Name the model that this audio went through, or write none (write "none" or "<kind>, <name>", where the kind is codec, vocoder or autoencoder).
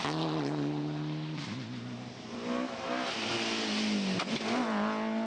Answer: none